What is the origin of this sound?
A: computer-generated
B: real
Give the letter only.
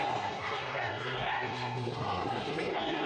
A